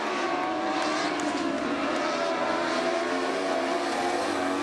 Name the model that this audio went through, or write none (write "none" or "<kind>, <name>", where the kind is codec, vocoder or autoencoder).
none